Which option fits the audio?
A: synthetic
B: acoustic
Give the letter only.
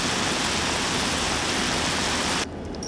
B